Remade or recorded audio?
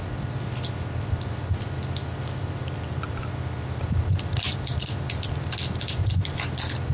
recorded